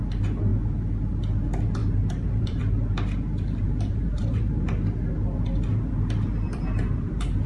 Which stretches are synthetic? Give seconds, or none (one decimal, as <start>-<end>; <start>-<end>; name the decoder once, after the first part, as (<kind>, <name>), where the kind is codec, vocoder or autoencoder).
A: 1.8-2.6 (vocoder, BigVGAN v2); 3.6-4.5; 5.7-7.5